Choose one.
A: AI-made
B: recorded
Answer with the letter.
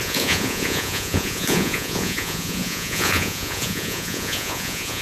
A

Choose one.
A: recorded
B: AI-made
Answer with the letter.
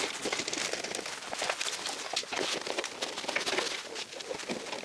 A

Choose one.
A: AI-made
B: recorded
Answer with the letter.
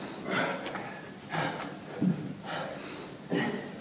B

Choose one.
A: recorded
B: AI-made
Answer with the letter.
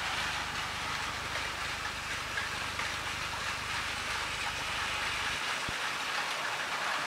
A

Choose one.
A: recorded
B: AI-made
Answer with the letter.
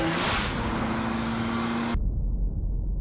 A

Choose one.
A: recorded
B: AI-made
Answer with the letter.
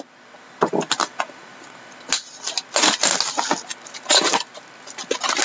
A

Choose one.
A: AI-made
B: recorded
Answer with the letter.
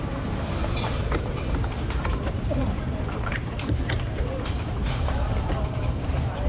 A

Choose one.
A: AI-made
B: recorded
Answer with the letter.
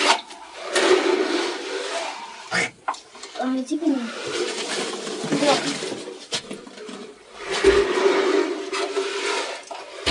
A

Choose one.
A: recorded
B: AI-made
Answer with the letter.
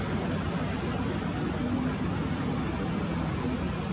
A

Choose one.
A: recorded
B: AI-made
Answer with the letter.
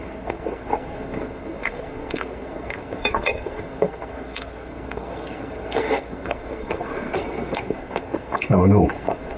B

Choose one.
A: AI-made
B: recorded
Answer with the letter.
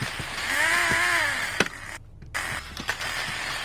B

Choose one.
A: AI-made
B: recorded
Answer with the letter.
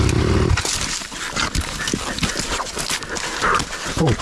B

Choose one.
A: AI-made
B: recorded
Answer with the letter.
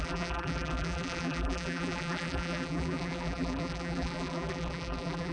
A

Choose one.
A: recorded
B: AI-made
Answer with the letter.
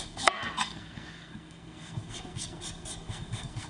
B